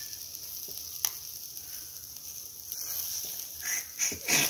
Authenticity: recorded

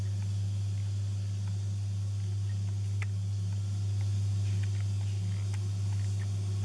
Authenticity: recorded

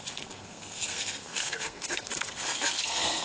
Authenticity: remade